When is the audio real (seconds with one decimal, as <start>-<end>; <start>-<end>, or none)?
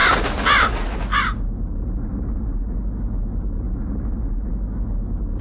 0.0-5.4